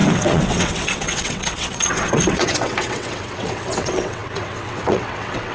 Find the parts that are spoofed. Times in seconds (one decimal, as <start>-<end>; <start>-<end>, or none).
0.0-5.5